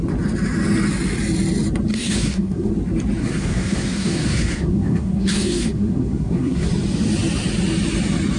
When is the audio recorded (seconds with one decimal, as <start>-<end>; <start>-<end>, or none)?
0.0-1.9; 2.7-3.2; 6.7-8.4